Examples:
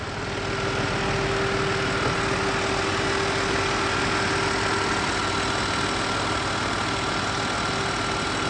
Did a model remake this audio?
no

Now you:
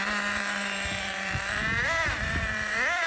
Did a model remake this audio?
yes